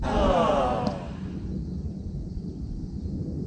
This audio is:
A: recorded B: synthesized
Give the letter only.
A